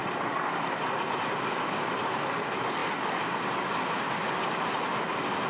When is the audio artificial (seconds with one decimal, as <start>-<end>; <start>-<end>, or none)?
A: none